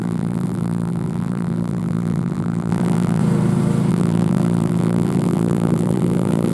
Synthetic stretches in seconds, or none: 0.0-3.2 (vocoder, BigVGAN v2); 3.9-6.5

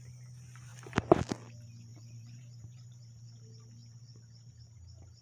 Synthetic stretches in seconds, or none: 1.9-3.0 (vocoder, BigVGAN v2)

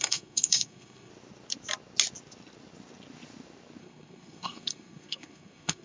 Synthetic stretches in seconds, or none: 0.0-1.1 (codec, SNAC); 3.8-5.8

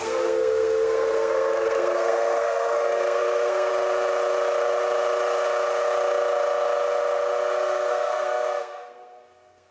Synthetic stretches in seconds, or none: 0.0-3.7 (codec, SNAC); 7.9-9.7

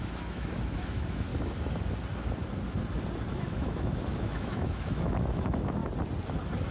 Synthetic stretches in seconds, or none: 0.0-1.3 (autoencoder, DAC-VAE); 3.3-5.8

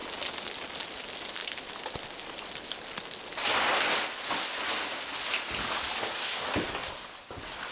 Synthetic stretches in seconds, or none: none

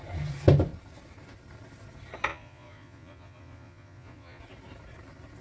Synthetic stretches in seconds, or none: 2.3-4.4 (vocoder, Vocos)

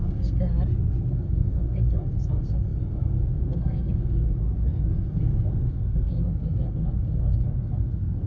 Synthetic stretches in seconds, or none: 0.0-0.5 (codec, SNAC); 1.1-8.3